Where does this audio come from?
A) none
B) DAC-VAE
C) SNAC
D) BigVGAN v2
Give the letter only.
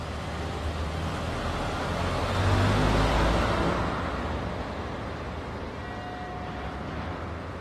A